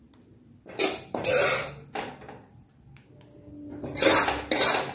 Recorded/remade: recorded